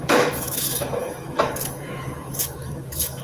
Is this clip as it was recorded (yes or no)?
no